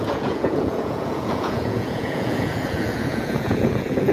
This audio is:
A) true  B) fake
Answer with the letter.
B